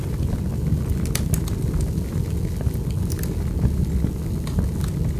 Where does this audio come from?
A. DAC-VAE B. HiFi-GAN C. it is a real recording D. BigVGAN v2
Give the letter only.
C